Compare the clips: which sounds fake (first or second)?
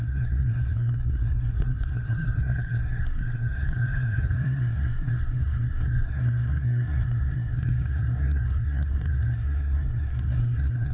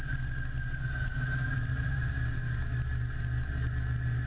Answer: first